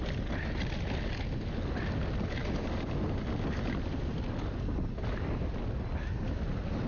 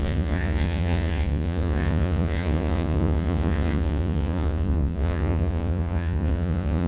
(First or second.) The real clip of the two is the first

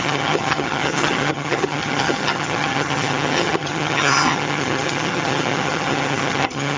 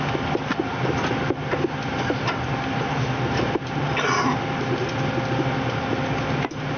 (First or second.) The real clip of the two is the second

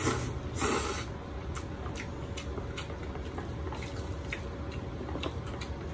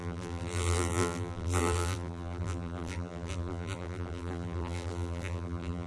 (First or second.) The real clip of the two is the first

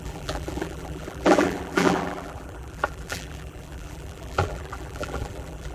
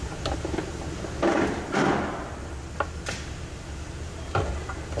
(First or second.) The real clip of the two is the second